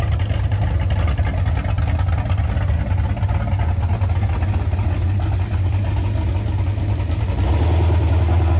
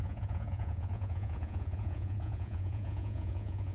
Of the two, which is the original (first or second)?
first